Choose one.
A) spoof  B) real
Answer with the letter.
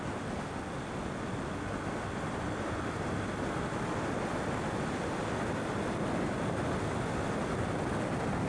B